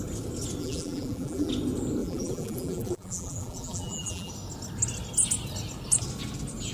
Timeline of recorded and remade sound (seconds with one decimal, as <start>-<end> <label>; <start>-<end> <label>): 0.0-0.6 recorded; 0.6-1.5 remade; 1.5-2.0 recorded; 2.0-4.3 remade; 4.3-6.7 recorded